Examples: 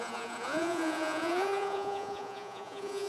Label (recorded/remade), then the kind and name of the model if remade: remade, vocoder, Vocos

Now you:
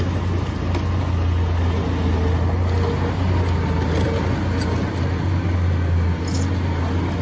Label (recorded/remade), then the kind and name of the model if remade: recorded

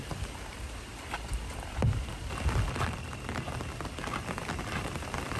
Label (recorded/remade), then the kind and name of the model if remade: recorded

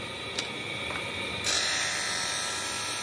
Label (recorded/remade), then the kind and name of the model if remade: remade, vocoder, BigVGAN v2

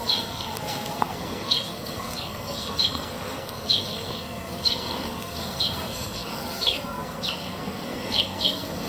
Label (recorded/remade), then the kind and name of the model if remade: remade, codec, SNAC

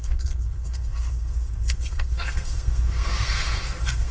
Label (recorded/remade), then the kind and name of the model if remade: remade, codec, SNAC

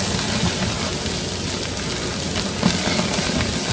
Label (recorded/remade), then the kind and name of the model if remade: recorded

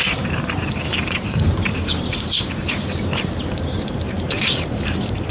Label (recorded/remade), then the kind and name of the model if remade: remade, vocoder, BigVGAN v2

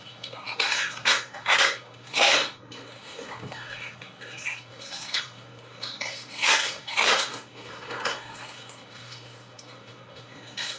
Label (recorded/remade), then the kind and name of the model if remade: remade, codec, SNAC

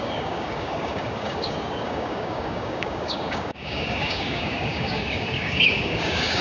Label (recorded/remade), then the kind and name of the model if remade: remade, codec, DAC